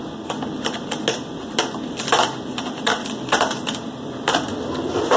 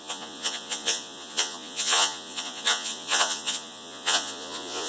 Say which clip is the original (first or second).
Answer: first